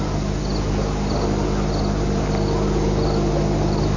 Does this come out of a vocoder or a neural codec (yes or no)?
no